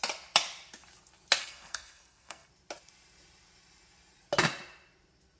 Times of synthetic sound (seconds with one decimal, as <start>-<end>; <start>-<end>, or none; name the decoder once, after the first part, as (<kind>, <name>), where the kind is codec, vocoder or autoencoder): 1.4-2.5 (codec, SNAC)